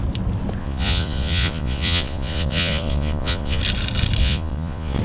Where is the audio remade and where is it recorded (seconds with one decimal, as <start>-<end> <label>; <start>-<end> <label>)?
0.0-0.6 recorded; 0.6-3.6 remade; 3.6-4.2 recorded; 4.2-5.0 remade